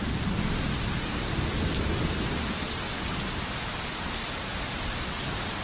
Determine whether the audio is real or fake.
real